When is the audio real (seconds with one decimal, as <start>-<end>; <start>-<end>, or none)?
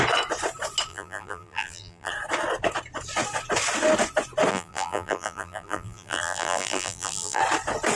0.0-0.9; 2.1-4.5; 7.4-8.0